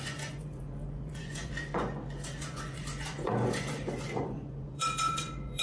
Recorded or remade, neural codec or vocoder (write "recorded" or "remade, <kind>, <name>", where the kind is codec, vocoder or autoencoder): remade, vocoder, Vocos